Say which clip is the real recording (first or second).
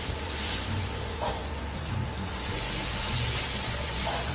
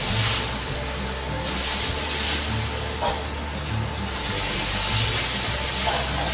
second